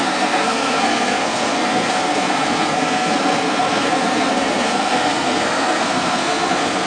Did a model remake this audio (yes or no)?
yes